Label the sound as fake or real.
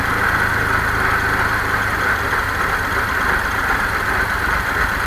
real